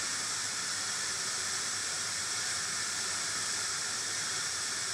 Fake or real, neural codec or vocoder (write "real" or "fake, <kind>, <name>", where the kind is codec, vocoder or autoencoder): fake, vocoder, BigVGAN v2